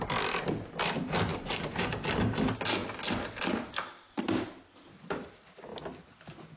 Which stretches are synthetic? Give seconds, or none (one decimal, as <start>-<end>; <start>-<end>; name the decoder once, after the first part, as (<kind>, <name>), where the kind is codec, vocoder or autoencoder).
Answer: 1.3-1.9 (codec, DAC)